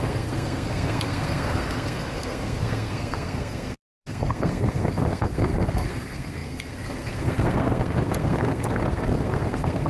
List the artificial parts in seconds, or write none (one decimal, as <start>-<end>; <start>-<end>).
0.0-9.9